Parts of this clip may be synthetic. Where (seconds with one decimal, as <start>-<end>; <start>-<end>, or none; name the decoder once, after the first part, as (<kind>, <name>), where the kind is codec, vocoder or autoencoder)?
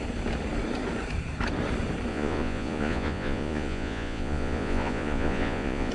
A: 2.1-5.9 (vocoder, Vocos)